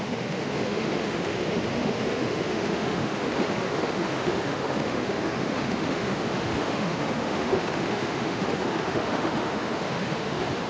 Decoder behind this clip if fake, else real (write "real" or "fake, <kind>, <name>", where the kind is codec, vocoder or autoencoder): fake, autoencoder, DAC-VAE